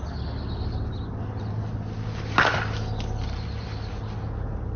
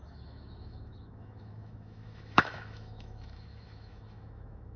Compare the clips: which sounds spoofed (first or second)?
second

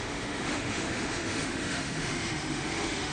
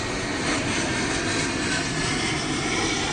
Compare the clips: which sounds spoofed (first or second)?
first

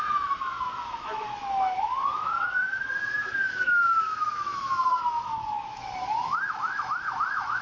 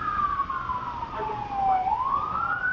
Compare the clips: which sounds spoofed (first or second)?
first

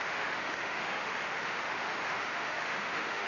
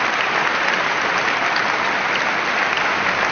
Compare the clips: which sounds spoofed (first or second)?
first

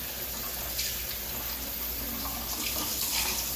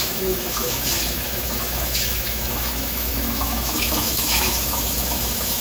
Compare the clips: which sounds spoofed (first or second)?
second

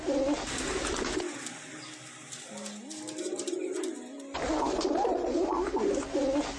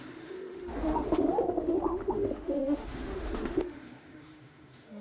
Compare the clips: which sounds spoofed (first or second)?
second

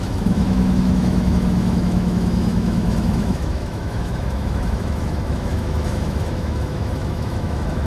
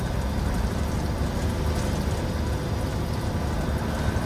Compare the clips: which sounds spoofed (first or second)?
first